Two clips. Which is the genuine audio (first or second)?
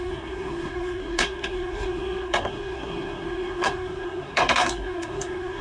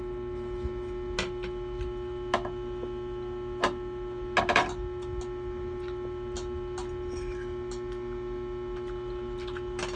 second